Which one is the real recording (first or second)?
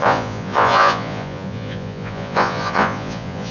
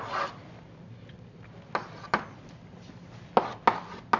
second